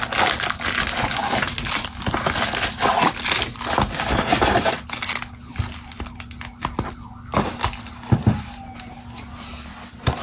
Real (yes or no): yes